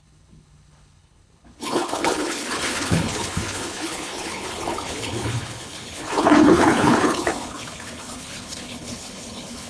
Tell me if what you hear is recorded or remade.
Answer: remade